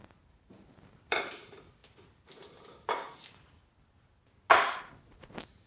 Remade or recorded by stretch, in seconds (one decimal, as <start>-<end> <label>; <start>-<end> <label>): 0.0-1.8 remade; 1.8-5.2 recorded; 5.2-5.7 remade